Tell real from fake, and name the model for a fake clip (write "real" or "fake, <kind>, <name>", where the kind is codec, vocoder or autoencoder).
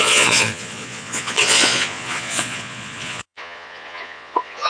fake, vocoder, Vocos